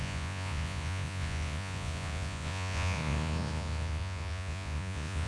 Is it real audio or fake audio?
fake